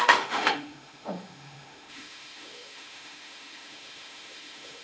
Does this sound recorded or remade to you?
remade